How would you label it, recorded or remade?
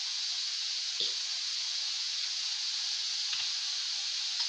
remade